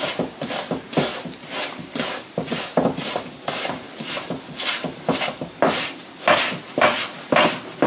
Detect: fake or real real